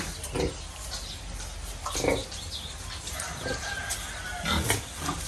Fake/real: real